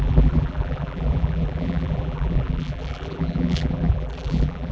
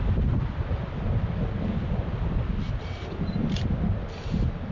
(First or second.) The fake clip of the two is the first